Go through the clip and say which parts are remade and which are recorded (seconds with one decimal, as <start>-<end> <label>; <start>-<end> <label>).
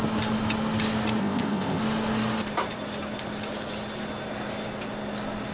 0.0-1.2 recorded; 1.2-1.8 remade; 1.8-5.5 recorded